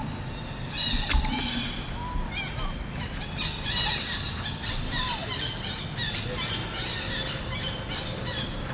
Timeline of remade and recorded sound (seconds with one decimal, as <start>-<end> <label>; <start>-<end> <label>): 0.0-8.7 recorded